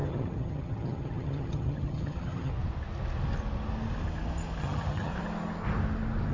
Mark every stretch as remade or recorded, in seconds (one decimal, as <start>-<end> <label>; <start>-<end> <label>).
0.0-2.5 remade; 2.5-4.6 recorded; 4.6-5.1 remade; 5.1-6.3 recorded